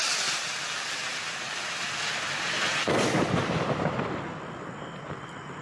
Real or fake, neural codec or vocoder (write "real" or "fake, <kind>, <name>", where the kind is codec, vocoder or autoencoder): real